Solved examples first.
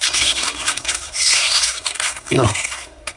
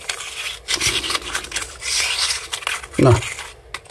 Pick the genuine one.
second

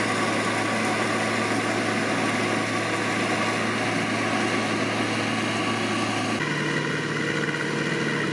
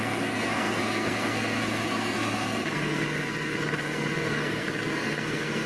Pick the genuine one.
first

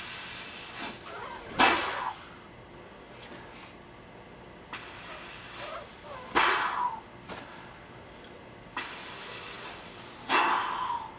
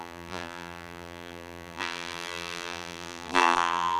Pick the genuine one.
first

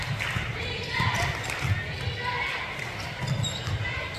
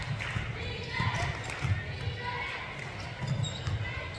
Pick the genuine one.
second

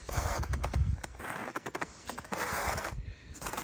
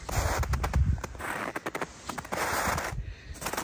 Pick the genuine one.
second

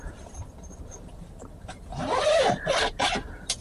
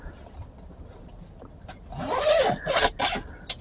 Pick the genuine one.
second